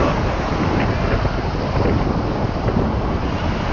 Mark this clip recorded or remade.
recorded